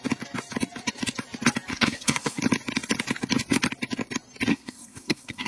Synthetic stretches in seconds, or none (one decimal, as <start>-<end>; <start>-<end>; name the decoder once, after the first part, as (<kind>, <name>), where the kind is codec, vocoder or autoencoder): 1.7-2.4 (codec, SNAC); 4.5-5.5